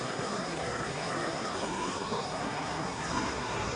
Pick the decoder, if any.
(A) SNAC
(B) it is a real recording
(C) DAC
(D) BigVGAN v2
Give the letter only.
A